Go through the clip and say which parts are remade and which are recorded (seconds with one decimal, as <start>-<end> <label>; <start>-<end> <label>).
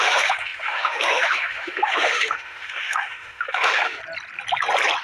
0.0-4.0 remade; 4.0-5.0 recorded